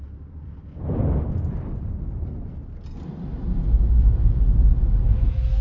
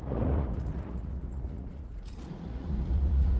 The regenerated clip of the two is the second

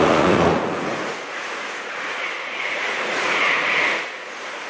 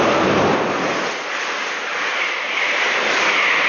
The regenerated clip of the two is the first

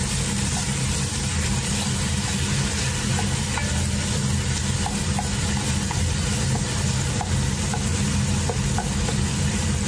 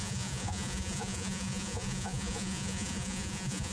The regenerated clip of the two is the second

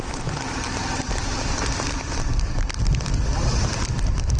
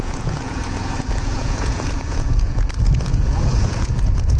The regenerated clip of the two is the second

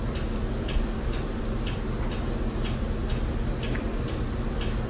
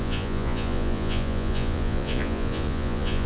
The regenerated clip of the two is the second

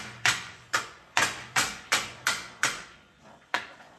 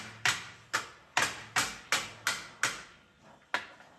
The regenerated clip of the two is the first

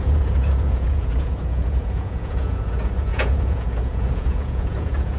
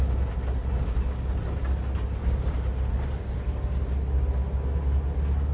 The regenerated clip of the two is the first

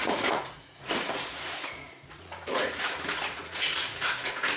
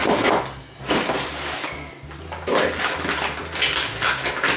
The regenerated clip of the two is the first